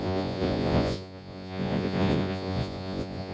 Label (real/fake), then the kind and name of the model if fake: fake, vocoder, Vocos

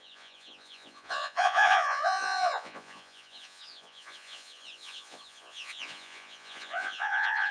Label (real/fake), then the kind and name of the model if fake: fake, vocoder, Vocos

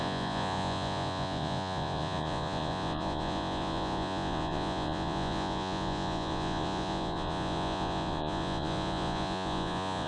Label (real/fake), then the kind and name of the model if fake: fake, vocoder, Vocos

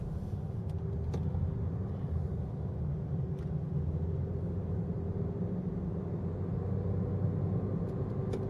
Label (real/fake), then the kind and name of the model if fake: real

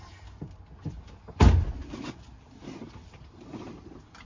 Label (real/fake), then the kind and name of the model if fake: real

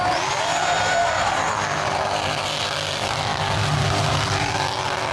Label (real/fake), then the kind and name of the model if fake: real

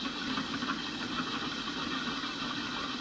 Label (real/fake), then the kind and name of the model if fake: real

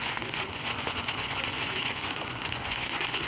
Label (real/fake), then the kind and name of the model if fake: fake, vocoder, Vocos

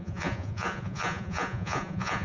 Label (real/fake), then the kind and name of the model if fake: fake, vocoder, Vocos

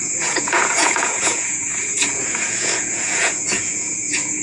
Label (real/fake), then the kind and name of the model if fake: fake, vocoder, Vocos